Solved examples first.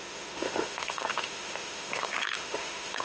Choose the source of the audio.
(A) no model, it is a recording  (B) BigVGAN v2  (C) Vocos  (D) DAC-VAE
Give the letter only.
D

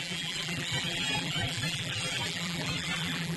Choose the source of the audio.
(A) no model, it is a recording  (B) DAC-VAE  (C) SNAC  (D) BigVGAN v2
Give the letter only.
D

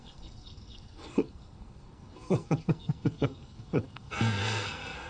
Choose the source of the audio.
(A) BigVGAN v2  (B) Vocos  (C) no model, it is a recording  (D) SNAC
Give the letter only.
D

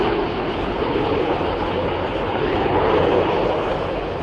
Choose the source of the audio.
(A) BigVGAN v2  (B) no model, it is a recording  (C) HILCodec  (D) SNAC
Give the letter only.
C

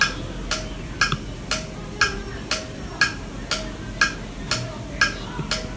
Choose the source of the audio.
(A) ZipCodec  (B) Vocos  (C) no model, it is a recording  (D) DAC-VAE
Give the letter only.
C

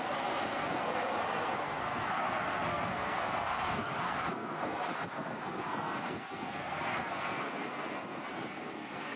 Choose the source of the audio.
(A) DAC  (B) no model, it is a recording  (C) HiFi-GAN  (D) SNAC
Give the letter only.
D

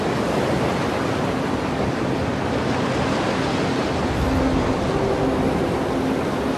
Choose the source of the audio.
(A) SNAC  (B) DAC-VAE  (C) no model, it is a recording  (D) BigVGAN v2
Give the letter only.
C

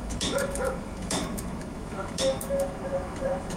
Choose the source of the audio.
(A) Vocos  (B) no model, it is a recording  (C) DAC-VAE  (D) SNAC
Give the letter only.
C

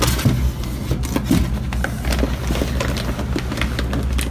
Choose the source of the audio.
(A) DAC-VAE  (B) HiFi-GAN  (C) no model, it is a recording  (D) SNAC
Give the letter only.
C